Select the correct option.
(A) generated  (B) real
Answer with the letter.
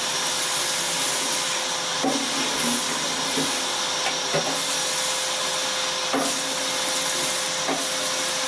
B